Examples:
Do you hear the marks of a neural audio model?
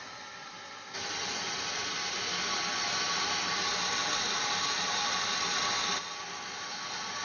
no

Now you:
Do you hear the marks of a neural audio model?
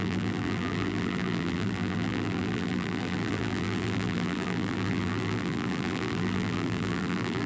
yes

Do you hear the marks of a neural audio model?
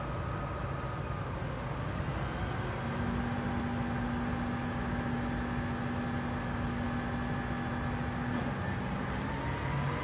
no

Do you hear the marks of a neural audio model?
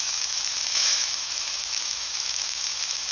yes